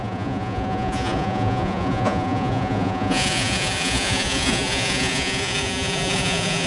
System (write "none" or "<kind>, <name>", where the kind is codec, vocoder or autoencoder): vocoder, Vocos